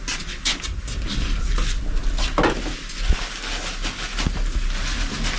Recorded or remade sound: recorded